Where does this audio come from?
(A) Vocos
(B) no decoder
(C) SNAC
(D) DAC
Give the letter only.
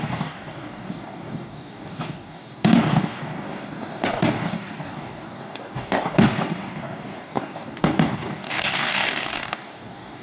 D